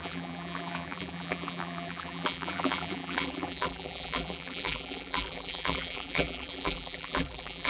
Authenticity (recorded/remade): remade